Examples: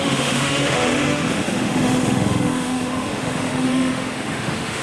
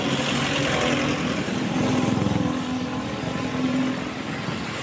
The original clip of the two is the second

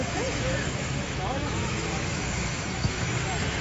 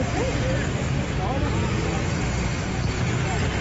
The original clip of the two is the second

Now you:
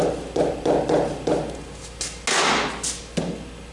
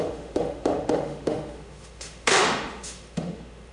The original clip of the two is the first